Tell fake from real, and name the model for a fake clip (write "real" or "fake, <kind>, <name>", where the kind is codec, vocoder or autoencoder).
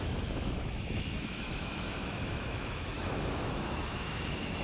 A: fake, autoencoder, DAC-VAE